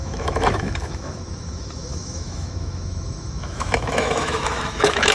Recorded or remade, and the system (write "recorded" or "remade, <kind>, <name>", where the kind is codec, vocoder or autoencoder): remade, autoencoder, DAC-VAE